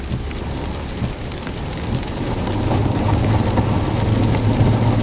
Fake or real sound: real